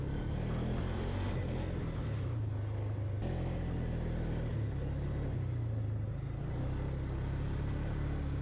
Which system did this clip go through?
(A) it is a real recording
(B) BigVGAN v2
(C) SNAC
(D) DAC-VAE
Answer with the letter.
A